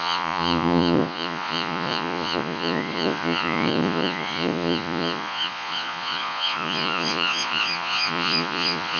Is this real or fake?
fake